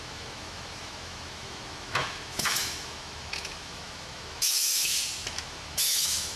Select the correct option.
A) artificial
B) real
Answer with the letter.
A